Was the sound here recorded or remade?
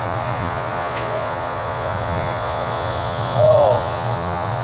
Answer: remade